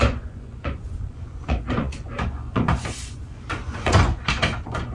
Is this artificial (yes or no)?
yes